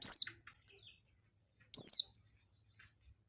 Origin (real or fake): real